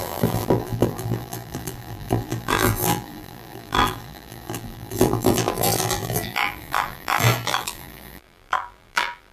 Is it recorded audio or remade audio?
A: remade